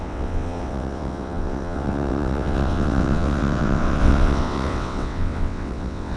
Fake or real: fake